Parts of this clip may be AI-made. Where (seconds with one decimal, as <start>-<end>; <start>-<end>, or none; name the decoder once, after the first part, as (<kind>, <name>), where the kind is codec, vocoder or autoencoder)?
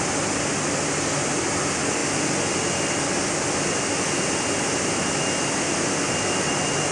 none